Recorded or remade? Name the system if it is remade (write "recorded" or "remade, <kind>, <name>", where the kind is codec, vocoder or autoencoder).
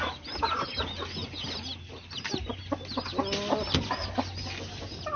recorded